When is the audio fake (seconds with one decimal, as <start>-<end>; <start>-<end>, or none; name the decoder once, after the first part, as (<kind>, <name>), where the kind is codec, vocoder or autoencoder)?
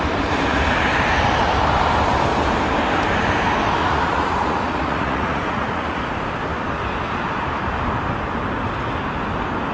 3.8-6.0 (vocoder, Vocos)